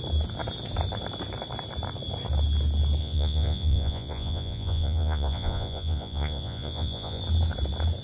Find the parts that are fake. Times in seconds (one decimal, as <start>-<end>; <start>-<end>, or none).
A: 3.0-7.2